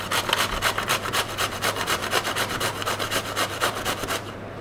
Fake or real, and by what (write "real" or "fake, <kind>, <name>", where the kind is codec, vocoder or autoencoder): fake, vocoder, BigVGAN v2